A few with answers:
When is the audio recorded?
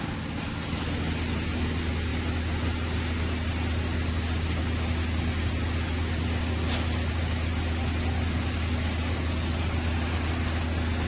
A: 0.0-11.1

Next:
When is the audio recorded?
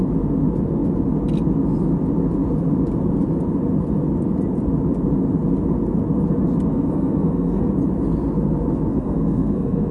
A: 0.0-6.7; 7.6-8.9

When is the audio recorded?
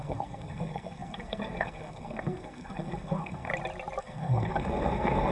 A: 3.5-4.0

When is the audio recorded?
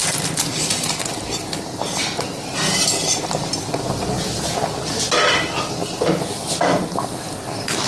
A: 0.0-7.9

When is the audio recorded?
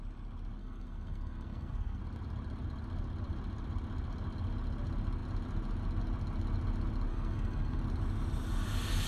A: 0.0-0.6; 2.0-7.1; 7.8-9.1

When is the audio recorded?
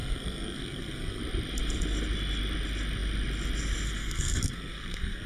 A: 1.2-4.0